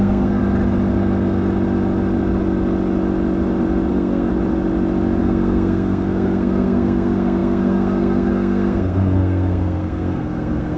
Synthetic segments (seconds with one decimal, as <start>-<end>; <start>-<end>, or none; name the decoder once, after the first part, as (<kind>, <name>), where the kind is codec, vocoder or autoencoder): 0.0-0.4 (codec, SNAC); 3.9-4.3; 5.2-10.8